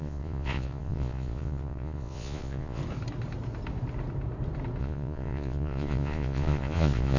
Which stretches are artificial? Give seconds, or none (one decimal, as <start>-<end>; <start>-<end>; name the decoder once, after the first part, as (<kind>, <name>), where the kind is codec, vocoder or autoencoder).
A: 0.0-2.8 (vocoder, Vocos); 4.8-7.2